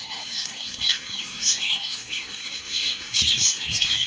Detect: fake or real fake